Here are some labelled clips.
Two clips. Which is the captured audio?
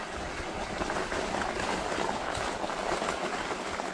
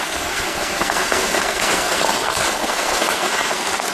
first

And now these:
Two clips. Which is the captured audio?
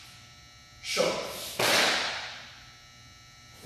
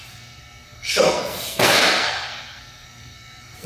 first